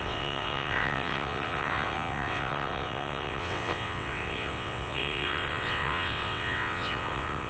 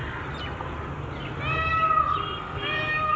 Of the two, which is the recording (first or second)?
second